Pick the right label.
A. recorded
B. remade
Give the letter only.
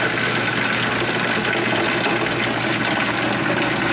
A